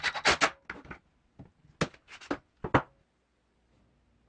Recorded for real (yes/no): yes